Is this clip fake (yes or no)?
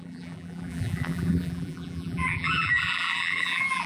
yes